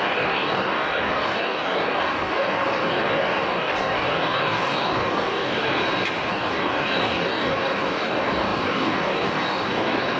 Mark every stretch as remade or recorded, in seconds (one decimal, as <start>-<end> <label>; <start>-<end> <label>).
0.0-5.8 remade; 5.8-6.3 recorded; 6.3-10.2 remade